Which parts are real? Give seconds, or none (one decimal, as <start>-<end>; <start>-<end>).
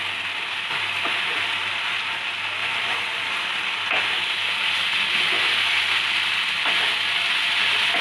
0.0-2.6; 3.3-8.0